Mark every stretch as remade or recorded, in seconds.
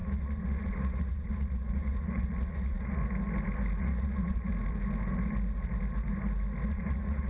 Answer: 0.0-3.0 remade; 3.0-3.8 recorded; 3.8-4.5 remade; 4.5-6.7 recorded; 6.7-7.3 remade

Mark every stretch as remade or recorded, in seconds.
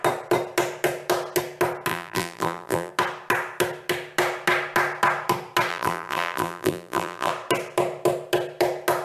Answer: 0.0-1.9 recorded; 1.9-2.9 remade; 2.9-5.7 recorded; 5.7-7.3 remade; 7.3-9.0 recorded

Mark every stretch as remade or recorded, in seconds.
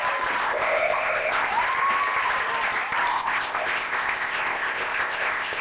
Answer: 0.0-0.4 recorded; 0.4-1.5 remade; 1.5-3.1 recorded; 3.1-5.6 remade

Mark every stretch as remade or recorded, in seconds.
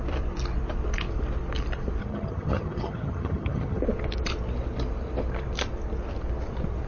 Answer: 0.0-2.0 recorded; 2.0-3.8 remade; 3.8-6.9 recorded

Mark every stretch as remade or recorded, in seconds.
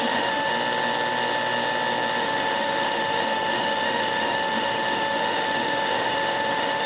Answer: 0.0-0.5 remade; 0.5-2.2 recorded; 2.2-6.9 remade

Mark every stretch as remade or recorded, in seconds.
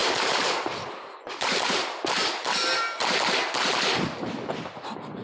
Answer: 0.0-3.1 remade; 3.1-5.2 recorded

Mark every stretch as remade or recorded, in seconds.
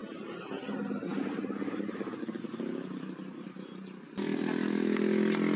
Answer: 0.0-5.6 recorded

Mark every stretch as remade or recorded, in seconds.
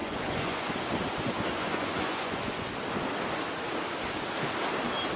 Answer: 0.0-0.7 remade; 0.7-1.5 recorded; 1.5-2.7 remade; 2.7-5.2 recorded